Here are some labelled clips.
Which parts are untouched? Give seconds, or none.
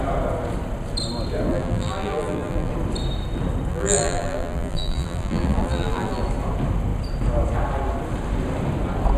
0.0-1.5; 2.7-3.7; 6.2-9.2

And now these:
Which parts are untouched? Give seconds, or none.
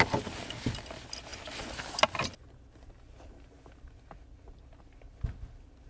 0.0-5.9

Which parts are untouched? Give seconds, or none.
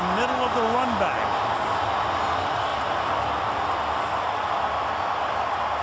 0.0-1.3; 1.9-2.7; 4.2-5.8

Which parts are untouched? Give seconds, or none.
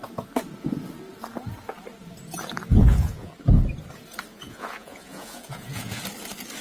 0.0-2.7; 3.3-4.3; 6.0-6.6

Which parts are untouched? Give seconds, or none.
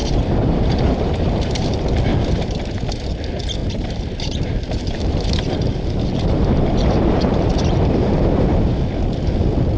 1.7-2.1; 3.1-3.6; 8.7-9.8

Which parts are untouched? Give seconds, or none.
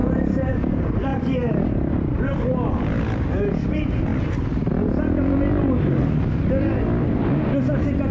0.5-8.1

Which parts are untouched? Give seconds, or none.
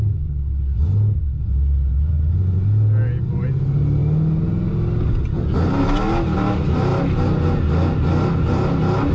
0.0-9.1